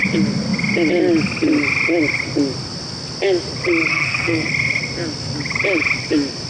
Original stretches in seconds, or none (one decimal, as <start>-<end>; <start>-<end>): 0.0-3.9; 4.5-6.5